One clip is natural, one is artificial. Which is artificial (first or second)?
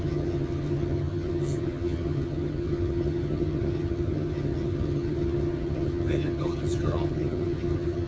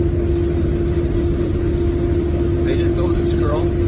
first